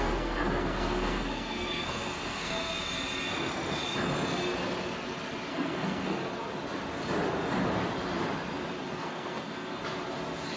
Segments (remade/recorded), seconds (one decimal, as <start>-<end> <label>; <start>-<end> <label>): 0.0-2.6 remade; 2.6-5.5 recorded; 5.5-6.2 remade; 6.2-8.8 recorded; 8.8-9.8 remade; 9.8-10.6 recorded

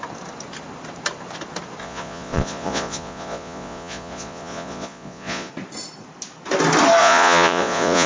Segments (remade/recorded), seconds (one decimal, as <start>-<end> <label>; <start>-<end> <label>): 0.0-1.8 recorded; 1.8-5.5 remade; 5.5-7.0 recorded; 7.0-8.1 remade

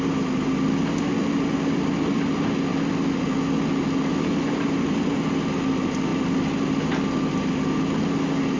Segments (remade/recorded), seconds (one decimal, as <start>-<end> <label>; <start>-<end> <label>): 0.0-8.6 recorded

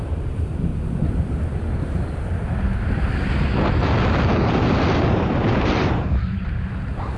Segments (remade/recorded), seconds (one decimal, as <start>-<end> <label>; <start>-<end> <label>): 0.0-7.2 recorded

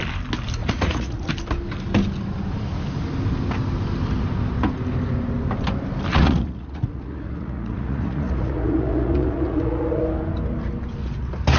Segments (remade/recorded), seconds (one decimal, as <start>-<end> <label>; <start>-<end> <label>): 0.0-0.6 recorded; 0.6-1.3 remade; 1.3-6.1 recorded; 6.1-10.0 remade; 10.0-11.6 recorded